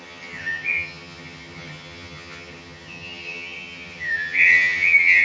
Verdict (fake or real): fake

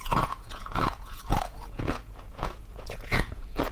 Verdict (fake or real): fake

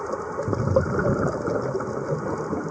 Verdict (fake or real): real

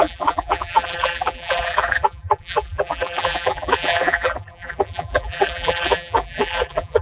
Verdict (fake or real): fake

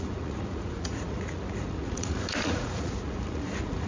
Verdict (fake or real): fake